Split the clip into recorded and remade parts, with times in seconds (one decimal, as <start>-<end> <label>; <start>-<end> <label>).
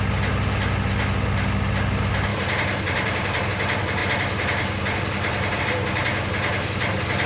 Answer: 0.0-2.3 recorded; 2.3-3.5 remade; 3.5-7.3 recorded